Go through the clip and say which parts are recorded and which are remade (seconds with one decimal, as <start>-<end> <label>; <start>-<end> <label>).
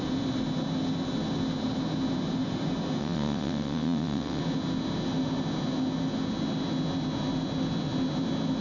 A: 0.0-3.0 recorded; 3.0-4.4 remade; 4.4-8.6 recorded